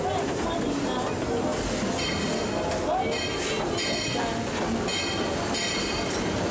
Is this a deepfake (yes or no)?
no